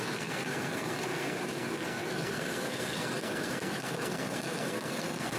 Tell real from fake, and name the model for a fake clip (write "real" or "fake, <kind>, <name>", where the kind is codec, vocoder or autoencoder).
fake, codec, SNAC